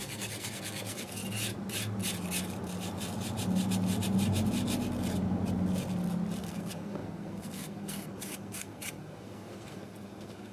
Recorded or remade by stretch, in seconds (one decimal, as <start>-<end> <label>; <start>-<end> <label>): 0.0-1.2 remade; 1.2-6.4 recorded; 6.4-10.5 remade